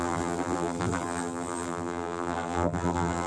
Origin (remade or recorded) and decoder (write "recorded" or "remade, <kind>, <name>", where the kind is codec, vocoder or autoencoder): remade, vocoder, BigVGAN v2